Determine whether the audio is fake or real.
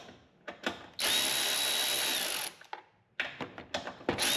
real